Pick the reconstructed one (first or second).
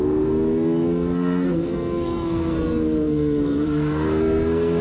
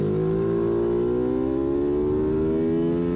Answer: first